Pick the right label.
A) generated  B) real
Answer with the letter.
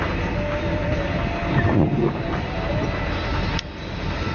B